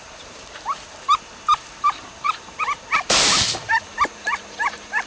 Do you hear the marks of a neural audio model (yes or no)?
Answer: yes